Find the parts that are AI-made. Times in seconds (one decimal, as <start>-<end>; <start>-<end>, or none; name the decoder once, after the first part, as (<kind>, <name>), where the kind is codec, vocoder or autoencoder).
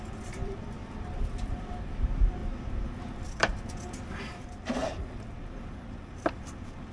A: 0.0-0.8 (vocoder, BigVGAN v2); 1.4-2.4; 4.3-4.8; 6.1-6.9